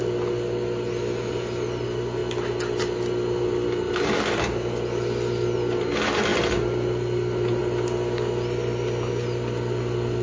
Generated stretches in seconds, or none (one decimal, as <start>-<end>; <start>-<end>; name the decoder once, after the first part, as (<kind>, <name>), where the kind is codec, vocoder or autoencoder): none